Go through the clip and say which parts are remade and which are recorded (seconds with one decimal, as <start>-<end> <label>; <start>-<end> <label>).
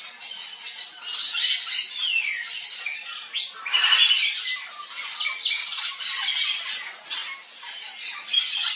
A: 0.0-5.6 recorded; 5.6-6.7 remade; 6.7-8.8 recorded